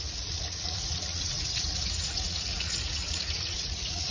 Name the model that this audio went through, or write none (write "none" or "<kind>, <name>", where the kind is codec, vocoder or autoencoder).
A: vocoder, Vocos